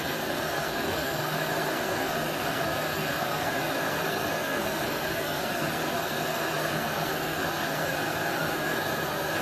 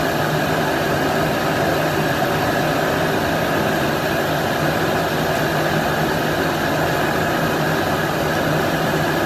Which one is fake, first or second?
first